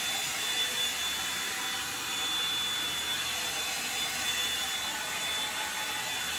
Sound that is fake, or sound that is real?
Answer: real